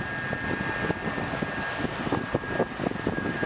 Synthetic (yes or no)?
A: no